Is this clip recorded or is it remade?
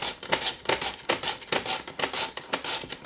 recorded